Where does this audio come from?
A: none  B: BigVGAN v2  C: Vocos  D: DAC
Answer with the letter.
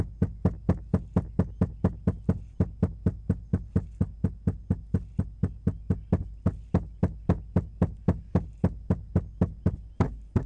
A